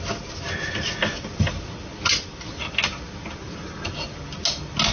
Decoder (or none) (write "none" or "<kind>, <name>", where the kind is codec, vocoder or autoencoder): none